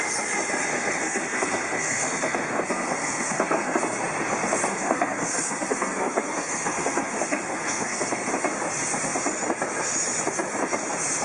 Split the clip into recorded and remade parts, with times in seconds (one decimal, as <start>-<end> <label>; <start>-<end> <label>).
0.0-0.7 recorded; 0.7-3.8 remade; 3.8-4.7 recorded; 4.7-8.3 remade; 8.3-11.2 recorded